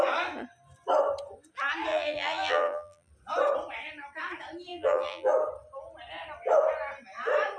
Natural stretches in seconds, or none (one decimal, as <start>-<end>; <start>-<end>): 0.0-1.9; 3.1-4.7; 5.3-7.6